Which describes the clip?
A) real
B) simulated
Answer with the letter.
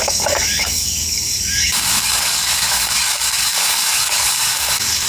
B